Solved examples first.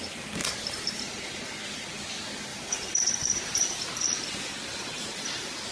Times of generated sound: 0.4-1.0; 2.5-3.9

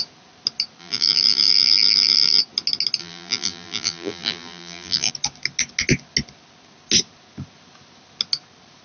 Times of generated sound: 0.8-2.4; 3.0-5.1

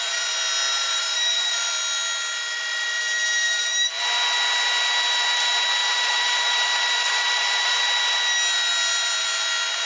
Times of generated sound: 0.7-1.5; 3.4-3.9; 5.8-7.8